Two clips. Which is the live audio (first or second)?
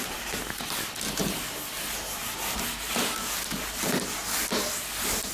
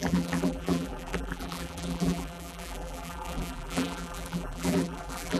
first